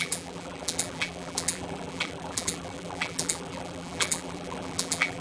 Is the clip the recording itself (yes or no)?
no